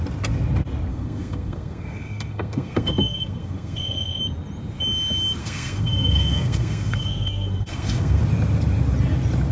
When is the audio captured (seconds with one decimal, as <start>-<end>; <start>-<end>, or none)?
0.0-0.9; 4.2-5.4; 8.2-9.5